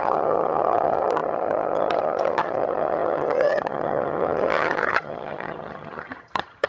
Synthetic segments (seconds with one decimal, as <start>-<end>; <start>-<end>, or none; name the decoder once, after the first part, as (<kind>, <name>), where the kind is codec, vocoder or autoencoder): 0.0-6.7 (vocoder, HiFi-GAN)